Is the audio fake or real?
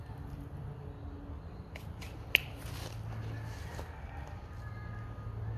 real